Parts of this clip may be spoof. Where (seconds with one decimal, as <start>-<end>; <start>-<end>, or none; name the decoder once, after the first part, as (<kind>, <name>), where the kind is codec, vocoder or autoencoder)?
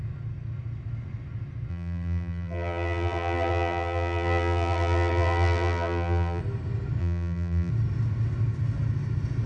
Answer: 1.7-6.4 (vocoder, BigVGAN v2); 7.0-7.7